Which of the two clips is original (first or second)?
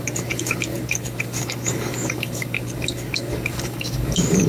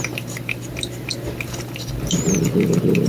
second